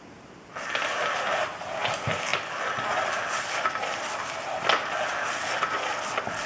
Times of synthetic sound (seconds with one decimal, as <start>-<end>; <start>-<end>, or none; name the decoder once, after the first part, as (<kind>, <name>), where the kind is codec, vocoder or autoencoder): none